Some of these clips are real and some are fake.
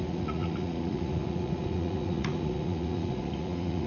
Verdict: fake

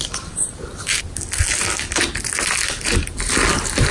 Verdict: real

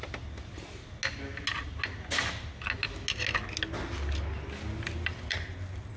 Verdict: real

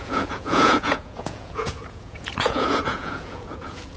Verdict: fake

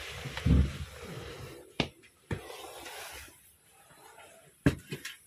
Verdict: real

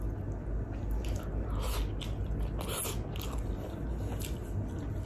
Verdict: real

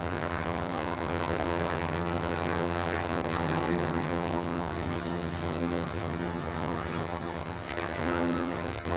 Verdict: fake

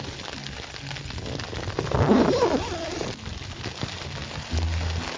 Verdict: real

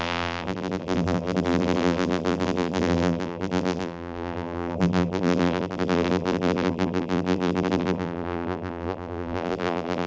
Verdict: fake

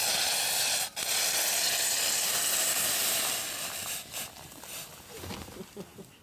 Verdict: real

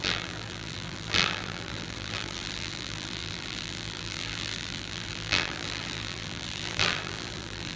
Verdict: fake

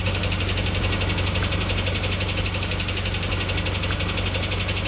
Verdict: real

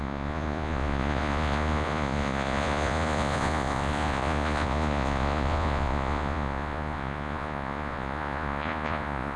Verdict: fake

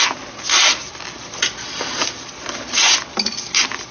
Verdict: real